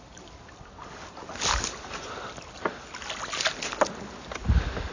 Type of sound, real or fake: real